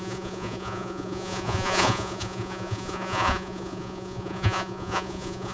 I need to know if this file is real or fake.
fake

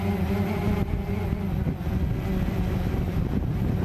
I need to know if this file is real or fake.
real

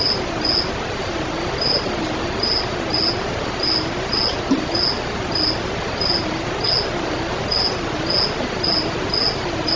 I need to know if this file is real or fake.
real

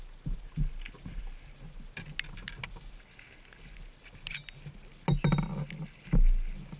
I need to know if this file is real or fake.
real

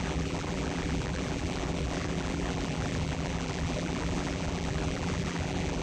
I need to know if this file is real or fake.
fake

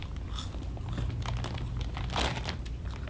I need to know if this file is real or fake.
real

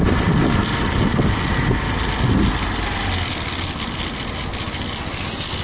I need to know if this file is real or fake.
real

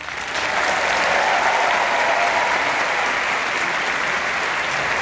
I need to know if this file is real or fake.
real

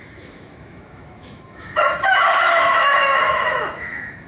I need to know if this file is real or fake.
fake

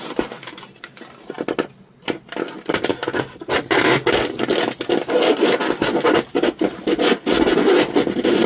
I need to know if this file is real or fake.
real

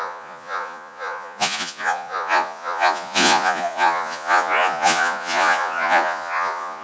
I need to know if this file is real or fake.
fake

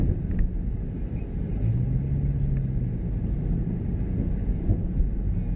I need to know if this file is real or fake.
real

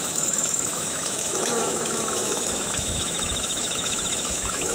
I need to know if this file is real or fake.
fake